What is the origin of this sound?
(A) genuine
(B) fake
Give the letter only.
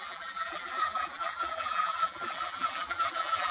B